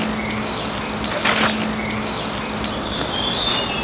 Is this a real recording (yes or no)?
yes